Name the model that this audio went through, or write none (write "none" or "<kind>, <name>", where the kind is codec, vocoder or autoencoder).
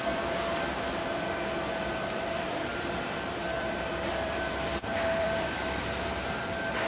vocoder, BigVGAN v2